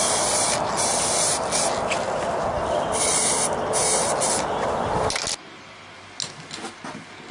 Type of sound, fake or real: real